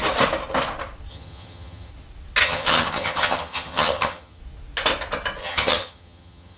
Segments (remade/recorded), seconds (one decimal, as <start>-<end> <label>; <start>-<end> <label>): 0.0-1.1 recorded; 1.1-1.9 remade; 1.9-2.4 recorded; 2.4-4.4 remade; 4.4-5.4 recorded; 5.4-6.6 remade